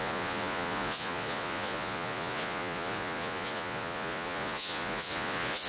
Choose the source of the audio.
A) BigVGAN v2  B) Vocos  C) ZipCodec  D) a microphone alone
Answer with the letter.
B